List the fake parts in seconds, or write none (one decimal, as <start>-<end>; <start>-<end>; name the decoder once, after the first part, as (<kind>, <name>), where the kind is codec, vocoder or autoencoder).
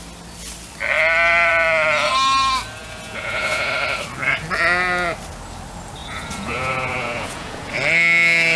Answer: 2.8-3.7 (vocoder, Vocos); 6.0-7.7